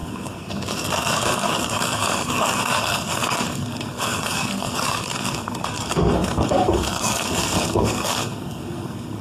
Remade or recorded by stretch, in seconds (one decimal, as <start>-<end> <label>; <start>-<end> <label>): 0.0-9.2 remade